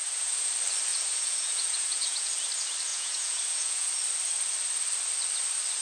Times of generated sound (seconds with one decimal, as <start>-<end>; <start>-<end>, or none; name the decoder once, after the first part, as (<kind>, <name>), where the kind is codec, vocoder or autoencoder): 0.0-0.5 (vocoder, Vocos); 0.9-2.3; 2.9-3.9